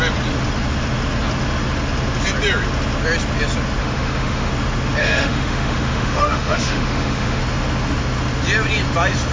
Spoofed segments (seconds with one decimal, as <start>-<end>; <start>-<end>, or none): 3.8-4.5; 5.0-7.4

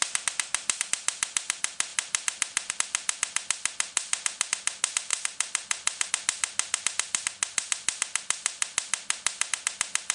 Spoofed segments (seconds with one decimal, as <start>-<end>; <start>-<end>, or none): 5.1-6.1

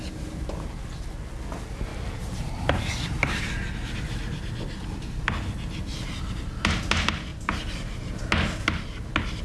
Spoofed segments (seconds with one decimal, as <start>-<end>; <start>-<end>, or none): 1.9-3.4; 7.3-8.2

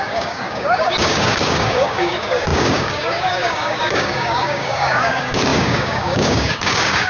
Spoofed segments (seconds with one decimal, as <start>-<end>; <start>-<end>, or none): 0.0-7.1

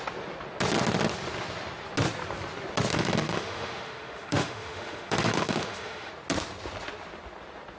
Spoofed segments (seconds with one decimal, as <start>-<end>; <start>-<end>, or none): 2.9-6.1

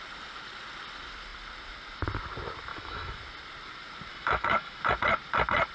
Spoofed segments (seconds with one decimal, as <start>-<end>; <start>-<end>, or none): 2.7-3.2; 4.1-4.8